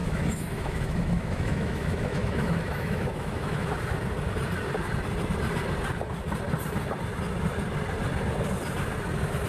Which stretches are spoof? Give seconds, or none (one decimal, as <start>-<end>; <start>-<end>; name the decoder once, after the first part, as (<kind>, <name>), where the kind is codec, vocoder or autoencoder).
0.0-3.7 (autoencoder, DAC-VAE)